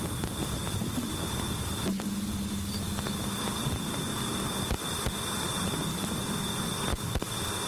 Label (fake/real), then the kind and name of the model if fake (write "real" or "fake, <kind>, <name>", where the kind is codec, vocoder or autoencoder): real